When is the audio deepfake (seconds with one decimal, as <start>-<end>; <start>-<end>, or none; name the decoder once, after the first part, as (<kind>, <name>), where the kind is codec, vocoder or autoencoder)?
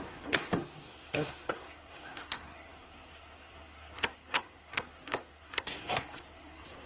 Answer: 0.0-6.9 (codec, SNAC)